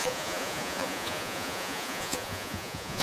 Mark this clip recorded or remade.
remade